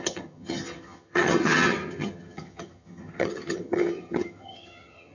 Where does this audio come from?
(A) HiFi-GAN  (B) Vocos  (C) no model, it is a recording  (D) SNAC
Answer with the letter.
A